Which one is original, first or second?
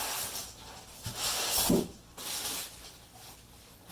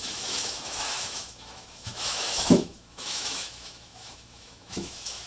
first